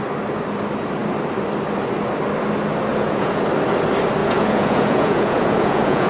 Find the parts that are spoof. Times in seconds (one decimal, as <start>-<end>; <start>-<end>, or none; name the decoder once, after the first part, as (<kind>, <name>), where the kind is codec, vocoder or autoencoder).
2.9-3.4 (vocoder, Vocos); 4.2-6.1